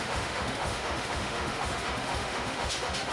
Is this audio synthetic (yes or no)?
yes